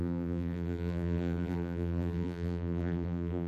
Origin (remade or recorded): remade